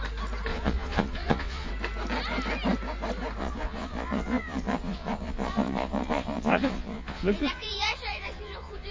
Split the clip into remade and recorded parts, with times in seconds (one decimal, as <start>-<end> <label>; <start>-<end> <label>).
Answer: 0.0-0.5 recorded; 0.5-1.7 remade; 1.7-3.4 recorded; 3.4-8.9 remade